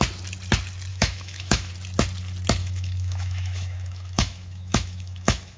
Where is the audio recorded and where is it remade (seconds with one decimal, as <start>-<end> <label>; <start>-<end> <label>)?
0.0-0.9 recorded; 0.9-1.7 remade; 1.7-2.6 recorded; 2.6-5.6 remade